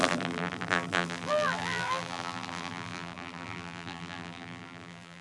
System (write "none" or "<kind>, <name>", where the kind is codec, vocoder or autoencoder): vocoder, BigVGAN v2